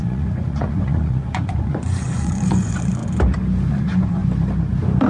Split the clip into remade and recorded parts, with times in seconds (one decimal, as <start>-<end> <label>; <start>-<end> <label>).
0.0-3.0 remade; 3.0-3.7 recorded; 3.7-4.2 remade; 4.2-5.1 recorded